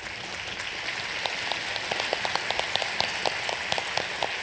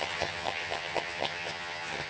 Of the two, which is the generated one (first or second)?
second